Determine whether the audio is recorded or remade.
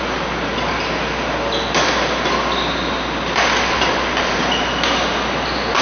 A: recorded